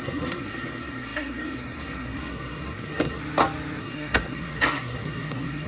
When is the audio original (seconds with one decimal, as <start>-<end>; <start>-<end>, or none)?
3.2-3.8